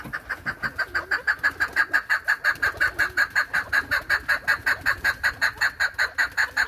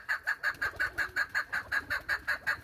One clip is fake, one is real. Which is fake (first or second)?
second